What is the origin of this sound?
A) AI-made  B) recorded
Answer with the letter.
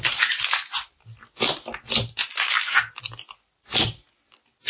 B